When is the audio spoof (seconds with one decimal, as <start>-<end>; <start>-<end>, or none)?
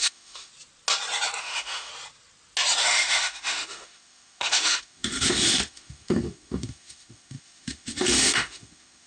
0.0-0.5; 1.4-1.9; 2.8-9.1